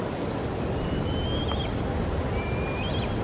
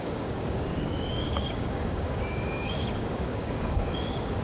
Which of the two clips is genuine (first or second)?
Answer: first